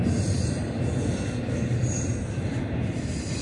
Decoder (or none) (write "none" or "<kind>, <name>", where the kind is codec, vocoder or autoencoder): none